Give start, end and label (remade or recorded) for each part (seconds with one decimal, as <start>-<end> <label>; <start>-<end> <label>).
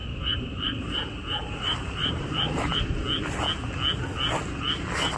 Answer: 0.0-0.8 remade; 0.8-1.4 recorded; 1.4-2.7 remade; 2.7-5.2 recorded